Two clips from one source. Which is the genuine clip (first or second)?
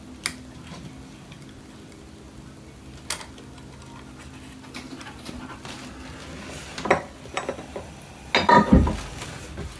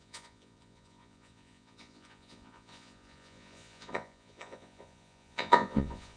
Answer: first